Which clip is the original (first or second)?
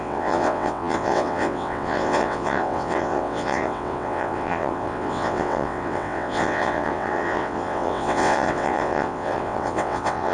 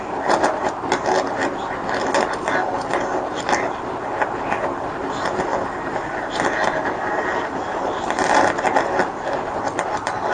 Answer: second